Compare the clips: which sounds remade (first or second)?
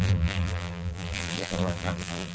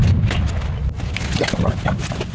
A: first